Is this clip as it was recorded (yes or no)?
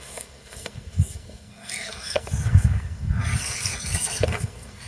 no